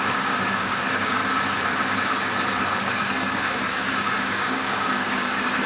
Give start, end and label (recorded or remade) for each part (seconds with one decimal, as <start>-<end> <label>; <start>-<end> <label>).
0.0-1.2 remade; 1.2-2.8 recorded; 2.8-5.7 remade

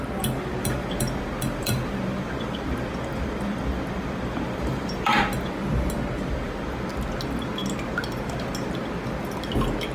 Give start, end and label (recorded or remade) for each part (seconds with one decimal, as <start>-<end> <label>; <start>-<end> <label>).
0.0-0.6 recorded; 0.6-5.5 remade; 5.5-6.2 recorded; 6.2-6.9 remade; 6.9-9.9 recorded

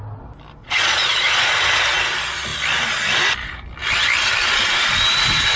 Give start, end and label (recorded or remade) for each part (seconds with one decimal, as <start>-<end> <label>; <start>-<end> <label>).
0.0-0.6 recorded; 0.6-1.5 remade; 1.5-5.6 recorded